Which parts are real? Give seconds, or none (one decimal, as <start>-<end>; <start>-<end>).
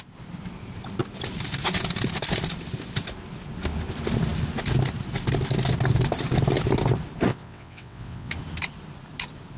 0.0-7.3; 8.3-9.6